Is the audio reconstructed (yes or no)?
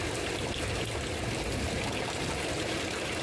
no